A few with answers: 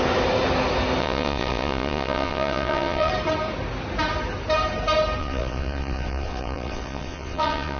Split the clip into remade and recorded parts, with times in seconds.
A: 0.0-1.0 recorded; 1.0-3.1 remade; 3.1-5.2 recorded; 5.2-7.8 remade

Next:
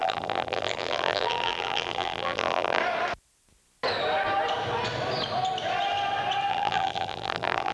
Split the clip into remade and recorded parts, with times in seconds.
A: 0.0-2.8 remade; 2.8-6.5 recorded; 6.5-7.7 remade

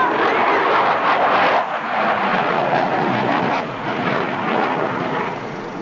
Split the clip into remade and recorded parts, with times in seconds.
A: 0.0-2.3 recorded; 2.3-5.8 remade

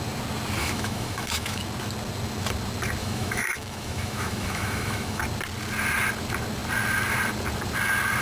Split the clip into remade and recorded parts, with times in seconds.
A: 0.0-0.6 recorded; 0.6-1.6 remade; 1.6-3.0 recorded; 3.0-5.2 remade; 5.2-8.2 recorded

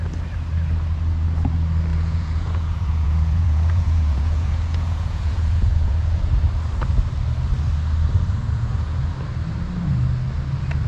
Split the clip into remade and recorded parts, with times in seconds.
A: 0.0-1.9 recorded; 1.9-6.3 remade; 6.3-8.4 recorded; 8.4-9.1 remade; 9.1-10.9 recorded

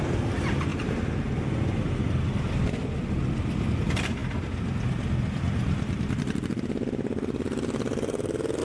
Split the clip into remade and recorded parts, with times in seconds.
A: 0.0-4.2 recorded; 4.2-8.6 remade

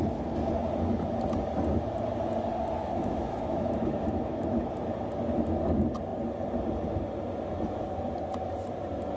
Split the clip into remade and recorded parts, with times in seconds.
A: 0.0-2.8 recorded; 2.8-4.7 remade; 4.7-9.2 recorded

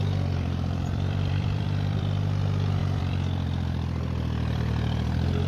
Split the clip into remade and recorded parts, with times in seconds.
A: 0.0-5.5 remade